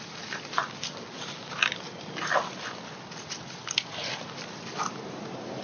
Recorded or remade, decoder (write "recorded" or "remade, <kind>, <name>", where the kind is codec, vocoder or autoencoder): recorded